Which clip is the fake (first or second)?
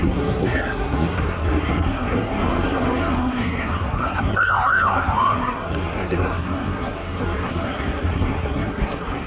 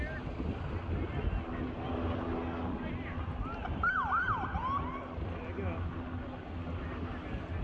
first